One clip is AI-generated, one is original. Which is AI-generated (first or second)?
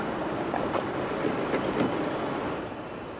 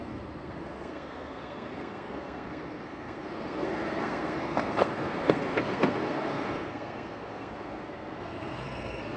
second